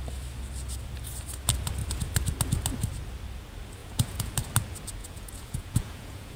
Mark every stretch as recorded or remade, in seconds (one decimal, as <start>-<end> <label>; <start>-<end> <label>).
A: 0.0-3.8 recorded; 3.8-4.3 remade; 4.3-5.0 recorded; 5.0-6.4 remade